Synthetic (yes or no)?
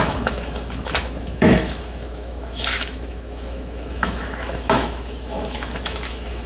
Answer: yes